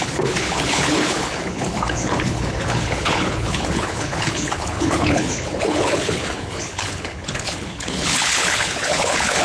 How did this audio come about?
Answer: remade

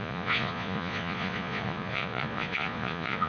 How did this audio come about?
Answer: remade